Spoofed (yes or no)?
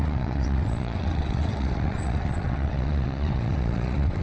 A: yes